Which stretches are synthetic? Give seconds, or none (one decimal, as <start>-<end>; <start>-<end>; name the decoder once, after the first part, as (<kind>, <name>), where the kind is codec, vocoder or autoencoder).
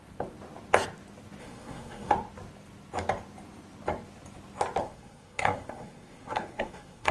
1.4-2.1 (codec, SNAC); 4.8-7.1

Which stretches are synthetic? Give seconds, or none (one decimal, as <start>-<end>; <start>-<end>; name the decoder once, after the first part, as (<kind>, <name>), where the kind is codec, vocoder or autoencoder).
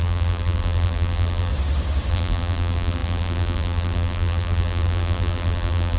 0.0-1.5 (vocoder, BigVGAN v2); 2.1-6.0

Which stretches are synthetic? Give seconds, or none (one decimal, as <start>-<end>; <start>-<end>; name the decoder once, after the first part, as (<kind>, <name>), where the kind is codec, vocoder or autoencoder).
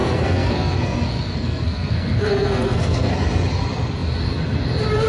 0.0-3.1 (codec, SNAC)